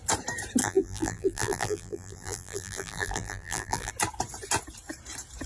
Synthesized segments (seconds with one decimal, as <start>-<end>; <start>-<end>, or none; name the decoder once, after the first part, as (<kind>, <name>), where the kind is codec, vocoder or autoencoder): 0.6-3.9 (vocoder, BigVGAN v2)